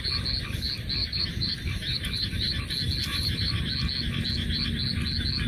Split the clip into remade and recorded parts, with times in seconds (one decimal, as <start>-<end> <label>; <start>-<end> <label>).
0.0-1.0 recorded; 1.0-2.6 remade; 2.6-3.1 recorded; 3.1-3.6 remade; 3.6-5.5 recorded